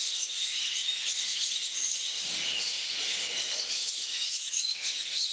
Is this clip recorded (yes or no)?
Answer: no